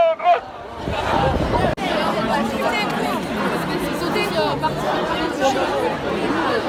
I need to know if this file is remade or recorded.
recorded